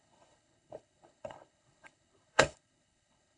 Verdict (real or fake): fake